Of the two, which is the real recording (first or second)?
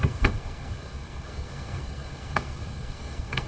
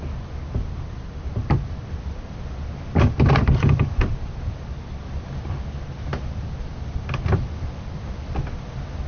second